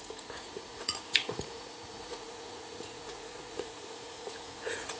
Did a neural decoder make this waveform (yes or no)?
yes